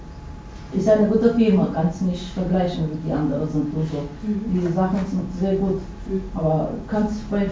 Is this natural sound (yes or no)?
yes